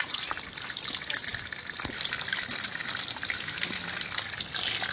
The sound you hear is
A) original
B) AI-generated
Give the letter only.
A